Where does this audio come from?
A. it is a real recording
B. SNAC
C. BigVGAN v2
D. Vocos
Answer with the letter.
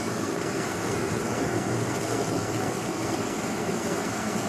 B